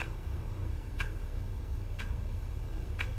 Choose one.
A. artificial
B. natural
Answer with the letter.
A